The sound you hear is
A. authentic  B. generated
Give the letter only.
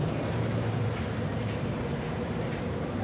B